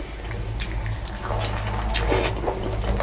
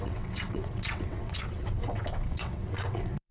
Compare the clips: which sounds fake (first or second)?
second